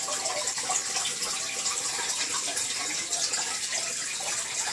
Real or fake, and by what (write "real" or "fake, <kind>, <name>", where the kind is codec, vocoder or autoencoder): real